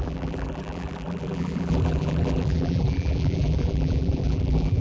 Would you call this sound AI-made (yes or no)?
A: yes